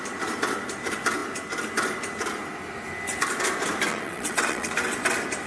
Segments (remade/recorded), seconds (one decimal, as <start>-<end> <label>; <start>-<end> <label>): 0.0-3.9 recorded; 3.9-4.7 remade; 4.7-5.5 recorded